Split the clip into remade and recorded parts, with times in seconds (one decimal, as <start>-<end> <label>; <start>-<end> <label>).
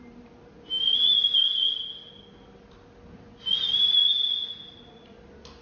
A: 0.0-5.6 recorded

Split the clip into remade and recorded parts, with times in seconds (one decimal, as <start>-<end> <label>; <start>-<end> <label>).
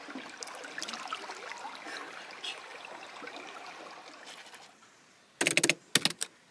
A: 0.0-2.7 recorded; 2.7-3.8 remade; 3.8-6.5 recorded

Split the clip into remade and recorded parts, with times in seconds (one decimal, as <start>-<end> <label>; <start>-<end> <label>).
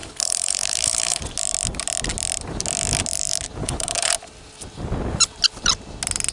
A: 0.0-1.2 remade; 1.2-3.6 recorded; 3.6-4.1 remade; 4.1-6.3 recorded